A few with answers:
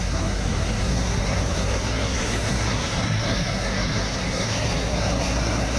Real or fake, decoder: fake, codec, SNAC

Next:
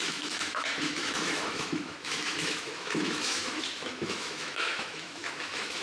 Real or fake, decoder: fake, autoencoder, DAC-VAE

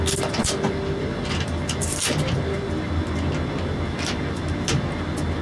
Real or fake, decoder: real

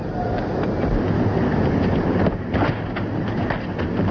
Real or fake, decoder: real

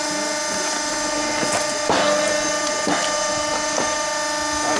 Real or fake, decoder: real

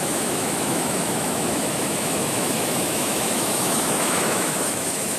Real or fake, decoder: fake, autoencoder, DAC-VAE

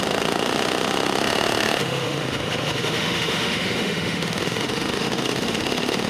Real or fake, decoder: fake, autoencoder, DAC-VAE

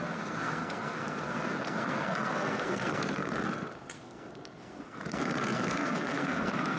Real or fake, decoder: fake, codec, SNAC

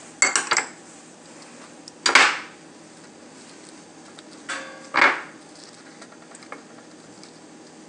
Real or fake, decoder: real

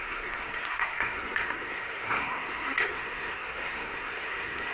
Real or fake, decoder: fake, codec, SNAC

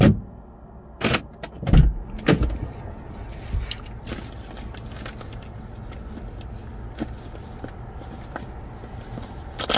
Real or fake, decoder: real